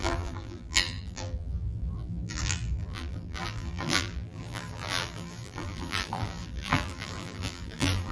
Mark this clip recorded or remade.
remade